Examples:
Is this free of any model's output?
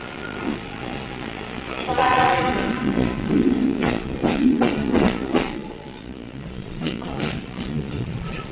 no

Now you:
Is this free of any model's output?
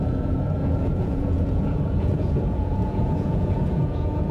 no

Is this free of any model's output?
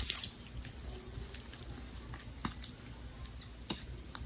yes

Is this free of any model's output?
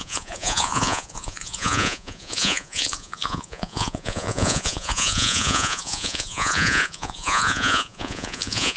no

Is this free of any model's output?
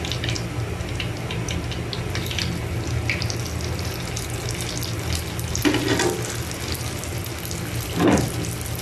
yes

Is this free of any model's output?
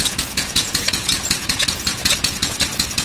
no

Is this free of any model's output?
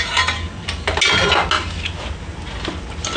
yes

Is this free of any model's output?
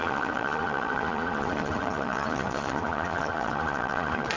no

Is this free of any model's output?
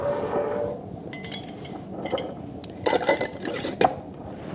yes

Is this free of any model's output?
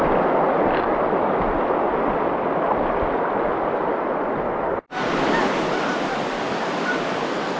yes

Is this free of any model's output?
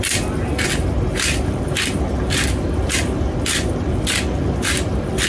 yes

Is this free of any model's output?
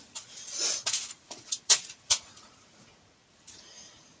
no